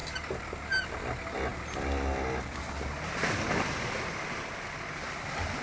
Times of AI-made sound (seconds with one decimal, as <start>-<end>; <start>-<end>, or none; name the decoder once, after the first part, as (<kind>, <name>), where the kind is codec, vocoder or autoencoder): none